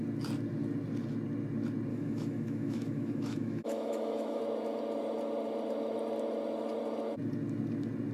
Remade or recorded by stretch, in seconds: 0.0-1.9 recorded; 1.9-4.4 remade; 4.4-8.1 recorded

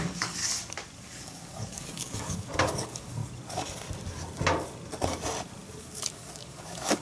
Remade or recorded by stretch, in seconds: 0.0-0.4 remade; 0.4-1.0 recorded; 1.0-3.2 remade; 3.2-5.8 recorded; 5.8-7.0 remade

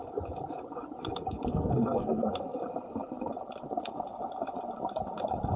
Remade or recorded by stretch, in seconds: 0.0-1.5 recorded; 1.5-2.3 remade; 2.3-5.6 recorded

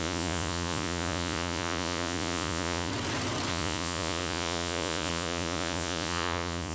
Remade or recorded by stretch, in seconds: 0.0-2.9 remade; 2.9-3.5 recorded; 3.5-6.7 remade

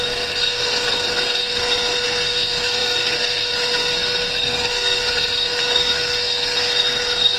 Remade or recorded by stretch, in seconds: 0.0-7.4 remade